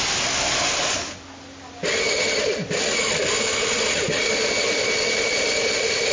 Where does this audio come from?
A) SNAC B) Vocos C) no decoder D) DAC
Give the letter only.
C